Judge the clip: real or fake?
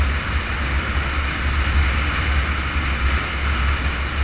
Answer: real